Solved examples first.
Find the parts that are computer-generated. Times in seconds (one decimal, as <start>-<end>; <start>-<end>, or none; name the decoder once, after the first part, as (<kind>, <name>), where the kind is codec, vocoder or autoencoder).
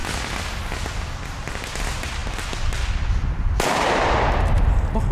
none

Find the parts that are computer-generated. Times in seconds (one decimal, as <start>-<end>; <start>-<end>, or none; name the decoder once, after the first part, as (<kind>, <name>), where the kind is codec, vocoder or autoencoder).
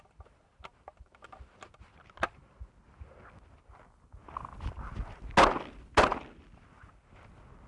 none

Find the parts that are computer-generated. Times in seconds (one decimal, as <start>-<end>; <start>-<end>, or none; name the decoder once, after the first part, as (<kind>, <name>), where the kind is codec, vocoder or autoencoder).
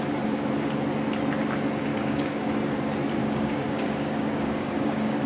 1.9-2.5 (codec, DAC); 3.2-5.3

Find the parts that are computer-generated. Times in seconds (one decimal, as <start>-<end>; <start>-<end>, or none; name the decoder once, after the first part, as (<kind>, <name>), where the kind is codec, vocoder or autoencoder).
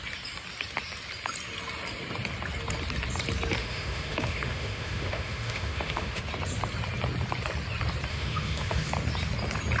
3.6-6.2 (autoencoder, DAC-VAE); 8.1-8.9